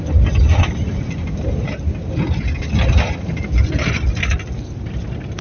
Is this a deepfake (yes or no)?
no